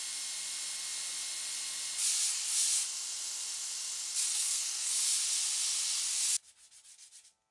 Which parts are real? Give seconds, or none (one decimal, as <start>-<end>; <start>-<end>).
0.0-4.3; 4.9-7.5